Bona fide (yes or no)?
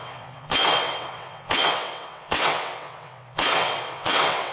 no